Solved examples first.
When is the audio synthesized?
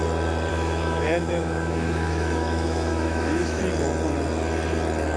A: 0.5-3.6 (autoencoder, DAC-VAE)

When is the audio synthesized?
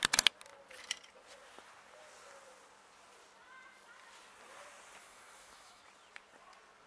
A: 5.0-5.8 (autoencoder, DAC-VAE)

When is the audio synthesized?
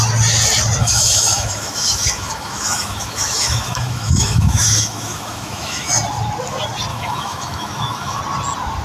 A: 0.8-5.9 (autoencoder, DAC-VAE); 6.9-8.2